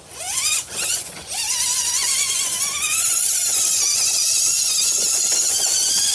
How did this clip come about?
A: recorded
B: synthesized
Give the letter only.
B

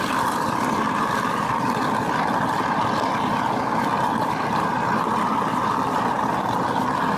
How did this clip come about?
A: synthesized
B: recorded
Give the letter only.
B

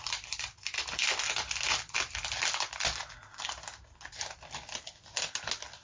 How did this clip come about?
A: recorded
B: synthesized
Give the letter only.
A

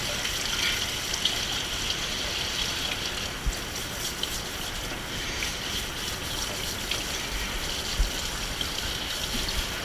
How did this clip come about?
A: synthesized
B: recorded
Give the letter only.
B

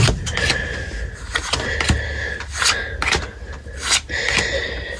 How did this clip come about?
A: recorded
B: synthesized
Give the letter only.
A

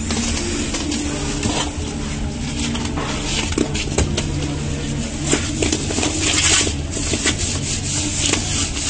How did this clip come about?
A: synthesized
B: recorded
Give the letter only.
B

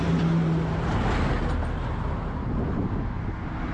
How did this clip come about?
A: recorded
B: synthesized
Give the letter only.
A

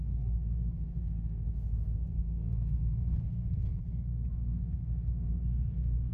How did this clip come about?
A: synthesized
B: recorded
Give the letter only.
A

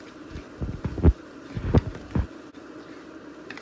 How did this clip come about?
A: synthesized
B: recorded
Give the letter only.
B